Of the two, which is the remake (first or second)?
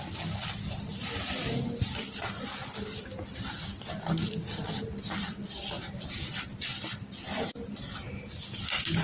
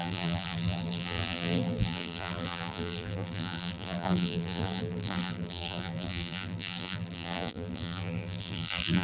second